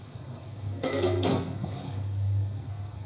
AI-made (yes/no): yes